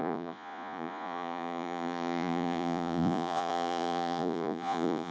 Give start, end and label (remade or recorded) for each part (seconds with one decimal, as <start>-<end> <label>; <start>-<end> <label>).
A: 0.0-5.1 remade